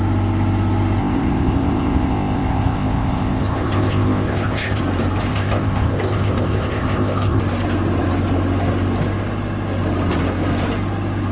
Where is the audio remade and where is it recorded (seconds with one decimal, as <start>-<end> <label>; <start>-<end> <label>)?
0.0-1.0 recorded; 1.0-4.8 remade; 4.8-5.3 recorded; 5.3-7.4 remade; 7.4-11.3 recorded